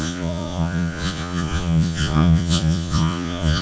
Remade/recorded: remade